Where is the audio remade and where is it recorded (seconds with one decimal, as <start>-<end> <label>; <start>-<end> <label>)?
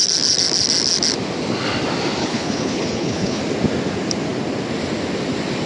0.0-2.2 recorded; 2.2-3.4 remade; 3.4-5.7 recorded